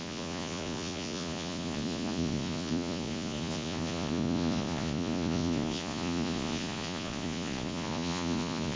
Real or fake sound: fake